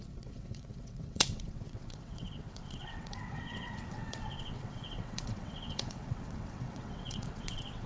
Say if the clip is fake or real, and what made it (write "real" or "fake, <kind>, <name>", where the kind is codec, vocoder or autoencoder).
fake, vocoder, WaveNeXt